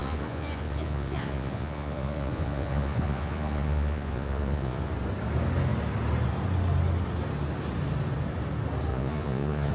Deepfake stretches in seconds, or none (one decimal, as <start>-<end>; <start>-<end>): 0.0-4.9; 8.9-9.7

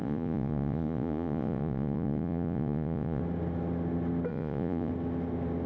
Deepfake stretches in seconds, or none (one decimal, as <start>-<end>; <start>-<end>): 0.0-3.2; 4.3-4.9

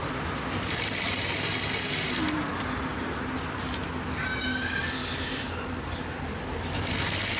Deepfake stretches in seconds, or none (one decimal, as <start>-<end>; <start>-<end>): none

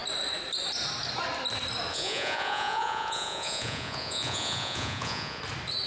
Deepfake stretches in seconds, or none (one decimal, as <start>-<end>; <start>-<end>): 1.9-5.4

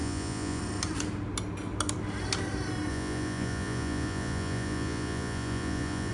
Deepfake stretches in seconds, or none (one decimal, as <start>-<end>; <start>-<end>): 0.0-0.6; 2.9-6.1

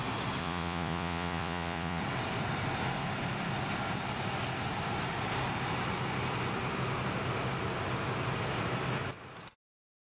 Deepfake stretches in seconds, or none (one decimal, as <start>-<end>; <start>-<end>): 0.4-2.0

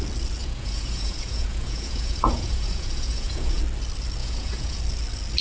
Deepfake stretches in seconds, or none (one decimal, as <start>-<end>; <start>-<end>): 0.4-3.6; 4.2-4.8

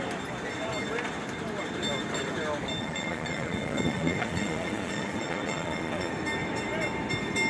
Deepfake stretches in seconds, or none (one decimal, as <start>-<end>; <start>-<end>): 2.8-6.1